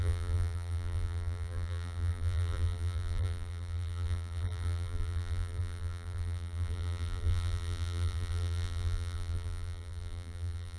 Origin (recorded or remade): remade